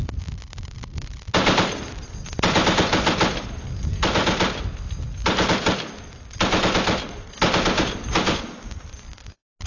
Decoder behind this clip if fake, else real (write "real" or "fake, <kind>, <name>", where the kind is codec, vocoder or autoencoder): real